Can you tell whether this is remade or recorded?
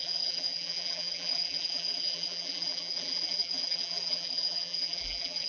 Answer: remade